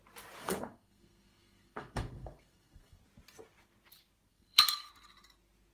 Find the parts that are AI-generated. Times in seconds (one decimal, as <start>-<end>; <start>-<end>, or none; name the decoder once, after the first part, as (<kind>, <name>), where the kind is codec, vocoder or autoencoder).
0.4-3.0 (codec, SNAC); 4.3-4.9